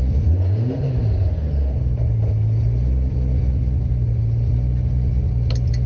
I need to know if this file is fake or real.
real